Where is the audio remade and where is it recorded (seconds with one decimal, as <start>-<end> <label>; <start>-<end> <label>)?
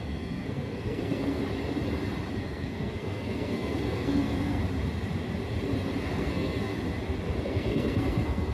0.0-1.4 remade; 1.4-2.3 recorded; 2.3-4.6 remade; 4.6-6.0 recorded; 6.0-6.7 remade; 6.7-7.4 recorded; 7.4-8.5 remade